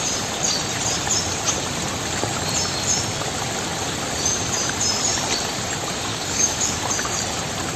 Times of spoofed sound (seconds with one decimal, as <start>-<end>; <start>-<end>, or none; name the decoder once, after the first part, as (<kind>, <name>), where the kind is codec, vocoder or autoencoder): 6.1-6.8 (codec, DAC)